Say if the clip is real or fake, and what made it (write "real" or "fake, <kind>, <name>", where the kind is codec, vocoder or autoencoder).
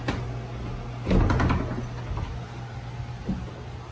real